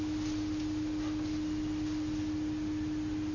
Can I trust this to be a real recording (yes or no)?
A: yes